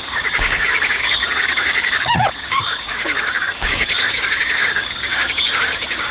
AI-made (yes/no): yes